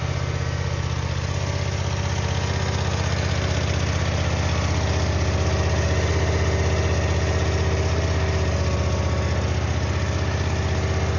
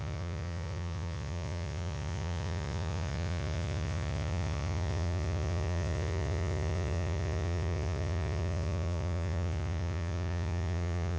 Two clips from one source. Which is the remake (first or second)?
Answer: second